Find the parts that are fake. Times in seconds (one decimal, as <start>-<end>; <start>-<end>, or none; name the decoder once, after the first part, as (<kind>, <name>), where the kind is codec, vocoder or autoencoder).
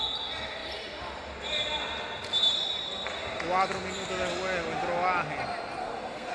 5.8-6.3 (codec, SNAC)